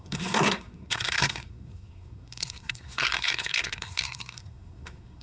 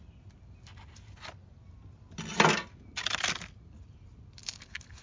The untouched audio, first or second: second